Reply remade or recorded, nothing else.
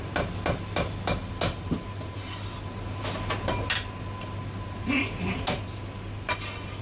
recorded